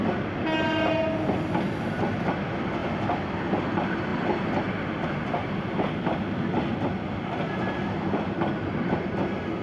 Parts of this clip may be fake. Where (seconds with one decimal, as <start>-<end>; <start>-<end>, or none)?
2.8-3.6

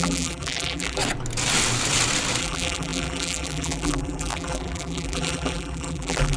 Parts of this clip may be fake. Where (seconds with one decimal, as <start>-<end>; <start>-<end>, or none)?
0.0-1.0; 2.4-6.4

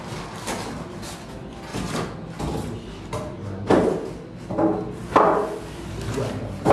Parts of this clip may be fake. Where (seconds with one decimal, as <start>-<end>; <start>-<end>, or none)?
5.3-5.9

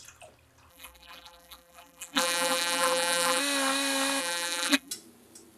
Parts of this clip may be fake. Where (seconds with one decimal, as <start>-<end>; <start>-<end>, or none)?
0.7-3.4; 4.2-4.9